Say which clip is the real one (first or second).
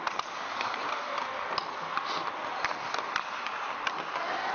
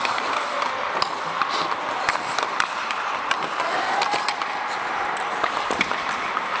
first